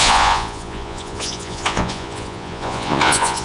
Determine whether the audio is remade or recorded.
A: remade